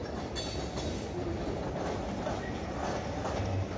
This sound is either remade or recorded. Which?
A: recorded